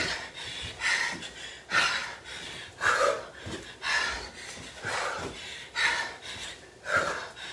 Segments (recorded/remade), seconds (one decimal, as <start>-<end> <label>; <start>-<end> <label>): 0.0-2.0 remade; 2.0-6.5 recorded; 6.5-7.5 remade